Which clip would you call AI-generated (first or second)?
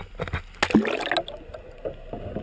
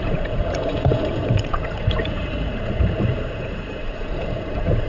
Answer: second